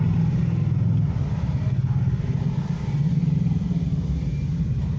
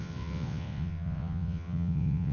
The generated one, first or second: second